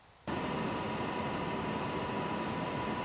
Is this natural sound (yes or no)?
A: yes